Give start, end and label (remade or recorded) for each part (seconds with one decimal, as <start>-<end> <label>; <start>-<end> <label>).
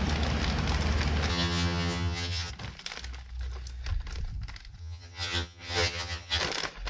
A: 0.0-1.3 recorded; 1.3-2.5 remade; 2.5-4.8 recorded; 4.8-6.4 remade; 6.4-6.9 recorded